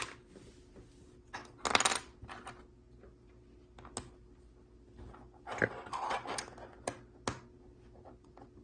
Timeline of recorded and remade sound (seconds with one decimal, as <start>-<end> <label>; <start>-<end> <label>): 0.0-8.6 recorded